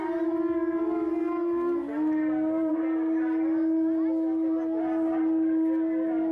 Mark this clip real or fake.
real